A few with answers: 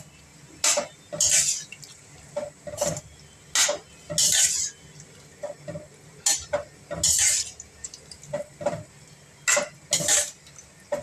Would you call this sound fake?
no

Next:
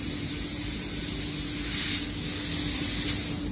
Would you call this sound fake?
no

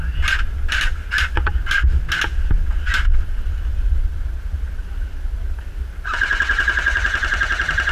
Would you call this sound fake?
no